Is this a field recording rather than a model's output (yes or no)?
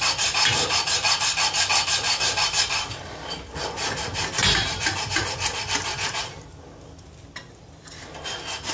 yes